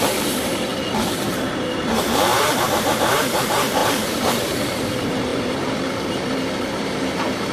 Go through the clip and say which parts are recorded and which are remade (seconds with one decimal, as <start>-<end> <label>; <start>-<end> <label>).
0.0-0.7 remade; 0.7-1.3 recorded; 1.3-7.5 remade